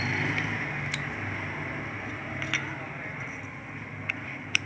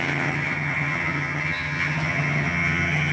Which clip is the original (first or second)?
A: first